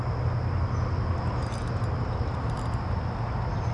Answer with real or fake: real